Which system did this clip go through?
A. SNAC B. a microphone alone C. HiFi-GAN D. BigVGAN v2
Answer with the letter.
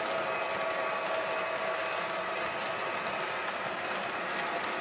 B